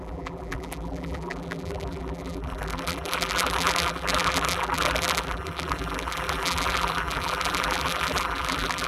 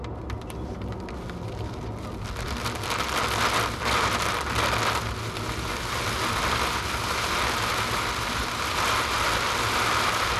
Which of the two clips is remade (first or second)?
first